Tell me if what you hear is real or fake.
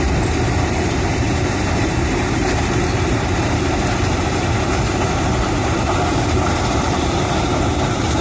fake